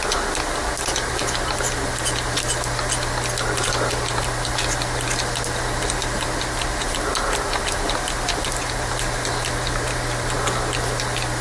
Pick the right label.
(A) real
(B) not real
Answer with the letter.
A